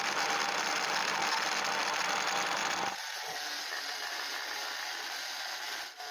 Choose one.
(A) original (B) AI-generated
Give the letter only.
A